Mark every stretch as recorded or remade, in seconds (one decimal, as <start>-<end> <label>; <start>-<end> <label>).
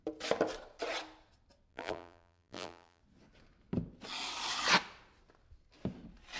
0.0-1.7 recorded; 1.7-3.0 remade; 3.0-6.4 recorded